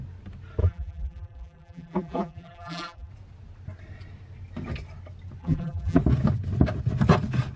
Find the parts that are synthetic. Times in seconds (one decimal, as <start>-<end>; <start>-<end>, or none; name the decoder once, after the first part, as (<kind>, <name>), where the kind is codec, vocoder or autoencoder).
0.6-3.1 (vocoder, BigVGAN v2); 5.4-6.0

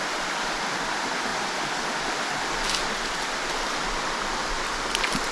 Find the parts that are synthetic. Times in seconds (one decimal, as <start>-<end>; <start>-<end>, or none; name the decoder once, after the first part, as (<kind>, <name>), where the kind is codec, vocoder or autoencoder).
none

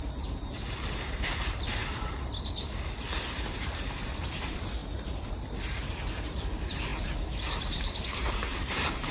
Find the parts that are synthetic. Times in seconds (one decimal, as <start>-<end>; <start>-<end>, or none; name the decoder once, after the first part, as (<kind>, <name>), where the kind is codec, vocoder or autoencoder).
0.0-1.8 (vocoder, BigVGAN v2); 3.3-9.1

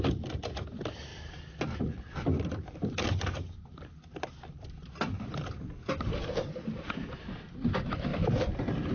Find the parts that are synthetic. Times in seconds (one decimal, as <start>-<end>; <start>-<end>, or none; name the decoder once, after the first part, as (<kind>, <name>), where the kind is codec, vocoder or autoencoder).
1.1-3.2 (vocoder, BigVGAN v2)

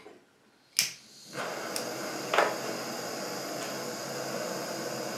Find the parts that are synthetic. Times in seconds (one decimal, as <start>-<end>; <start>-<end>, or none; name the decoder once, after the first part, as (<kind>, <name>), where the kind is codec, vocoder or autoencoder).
none

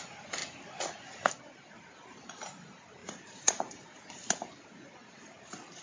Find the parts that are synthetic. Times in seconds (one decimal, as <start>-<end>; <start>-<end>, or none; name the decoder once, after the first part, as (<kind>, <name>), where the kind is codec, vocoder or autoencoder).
3.0-4.0 (vocoder, BigVGAN v2)

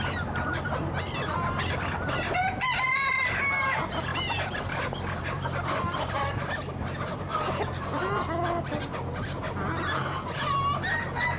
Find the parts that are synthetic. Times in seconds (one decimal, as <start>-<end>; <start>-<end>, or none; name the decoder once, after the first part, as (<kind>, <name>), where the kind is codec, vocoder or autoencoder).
4.1-6.8 (vocoder, BigVGAN v2)

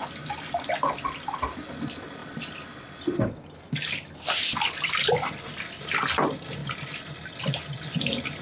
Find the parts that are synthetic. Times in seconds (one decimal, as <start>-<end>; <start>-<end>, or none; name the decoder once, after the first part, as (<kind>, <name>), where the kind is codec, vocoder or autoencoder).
none